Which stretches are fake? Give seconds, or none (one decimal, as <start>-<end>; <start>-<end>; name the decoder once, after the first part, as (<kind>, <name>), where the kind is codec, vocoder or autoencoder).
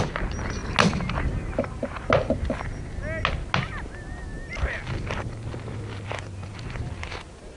none